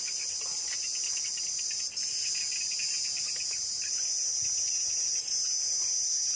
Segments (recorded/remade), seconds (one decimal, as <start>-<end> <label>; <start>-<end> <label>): 0.0-6.4 recorded